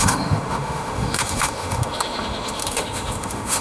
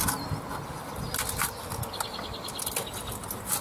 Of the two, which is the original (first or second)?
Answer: second